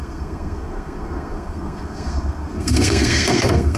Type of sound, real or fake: fake